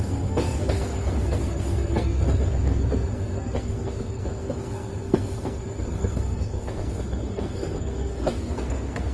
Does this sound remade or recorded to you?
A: remade